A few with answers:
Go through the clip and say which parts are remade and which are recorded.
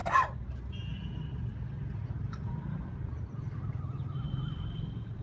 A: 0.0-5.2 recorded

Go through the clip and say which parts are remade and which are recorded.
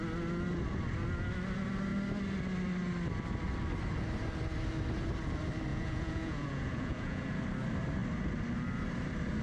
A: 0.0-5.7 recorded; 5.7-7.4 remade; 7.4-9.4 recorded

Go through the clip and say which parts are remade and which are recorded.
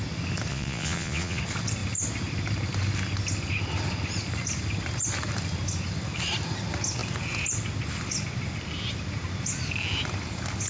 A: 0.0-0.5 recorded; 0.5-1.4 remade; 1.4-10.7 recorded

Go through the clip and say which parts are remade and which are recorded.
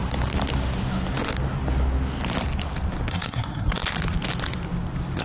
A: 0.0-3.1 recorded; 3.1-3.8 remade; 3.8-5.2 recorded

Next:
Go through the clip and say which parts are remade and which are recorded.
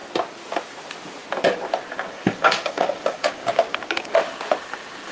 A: 0.0-2.1 recorded; 2.1-4.1 remade; 4.1-5.1 recorded